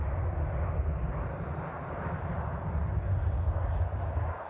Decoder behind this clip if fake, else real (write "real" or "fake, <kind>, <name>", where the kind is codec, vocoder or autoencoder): real